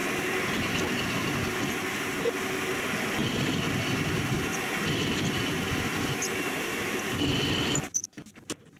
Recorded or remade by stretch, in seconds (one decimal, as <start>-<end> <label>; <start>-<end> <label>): 0.0-3.2 recorded; 3.2-7.0 remade; 7.0-8.8 recorded